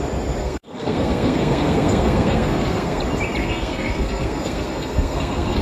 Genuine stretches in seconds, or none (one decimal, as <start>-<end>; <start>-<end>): 0.0-0.4; 3.0-3.4